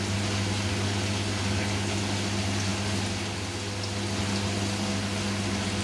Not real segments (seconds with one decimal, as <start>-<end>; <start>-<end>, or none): none